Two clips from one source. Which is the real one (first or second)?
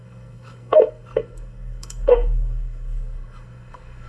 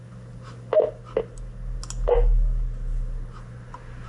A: second